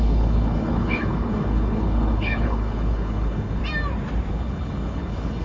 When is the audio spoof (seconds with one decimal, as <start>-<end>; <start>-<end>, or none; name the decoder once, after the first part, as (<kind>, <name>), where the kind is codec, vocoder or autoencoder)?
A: 0.0-3.6 (codec, HILCodec); 4.3-5.4